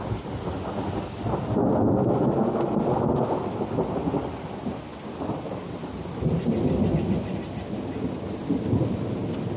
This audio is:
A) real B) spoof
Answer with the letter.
A